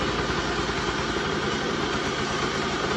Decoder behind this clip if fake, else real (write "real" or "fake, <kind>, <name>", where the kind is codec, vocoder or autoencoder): fake, vocoder, BigVGAN v2